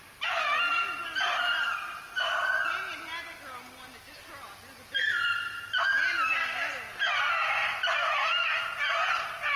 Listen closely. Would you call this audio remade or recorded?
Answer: recorded